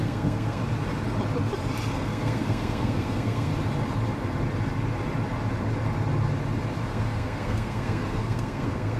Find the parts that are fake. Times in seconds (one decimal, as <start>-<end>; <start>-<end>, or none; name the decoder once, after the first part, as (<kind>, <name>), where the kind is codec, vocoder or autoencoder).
0.0-0.6 (codec, SNAC); 1.9-3.5; 6.9-9.0